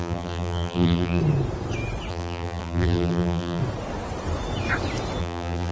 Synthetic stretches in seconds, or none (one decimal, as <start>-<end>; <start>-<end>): 0.0-1.2; 2.1-3.6; 5.2-5.7